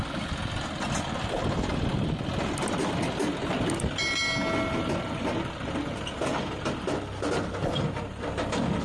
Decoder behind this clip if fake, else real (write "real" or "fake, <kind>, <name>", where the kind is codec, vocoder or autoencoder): real